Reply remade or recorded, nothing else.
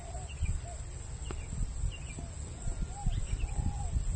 recorded